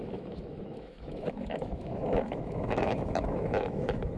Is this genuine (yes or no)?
no